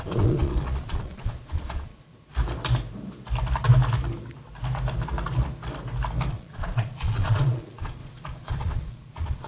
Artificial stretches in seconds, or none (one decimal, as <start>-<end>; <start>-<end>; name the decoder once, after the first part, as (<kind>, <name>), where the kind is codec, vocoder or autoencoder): 0.0-2.1 (vocoder, Vocos); 6.3-9.5